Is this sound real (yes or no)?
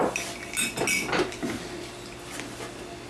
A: yes